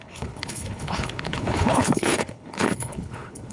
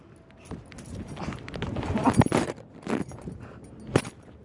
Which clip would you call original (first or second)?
second